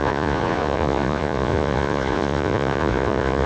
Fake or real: fake